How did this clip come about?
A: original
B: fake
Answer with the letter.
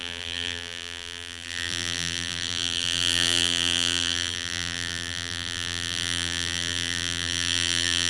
B